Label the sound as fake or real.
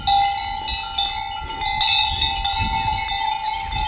real